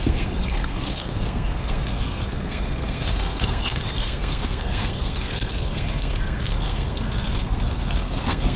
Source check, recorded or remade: remade